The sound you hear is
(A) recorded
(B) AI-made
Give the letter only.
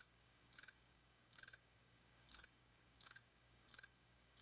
B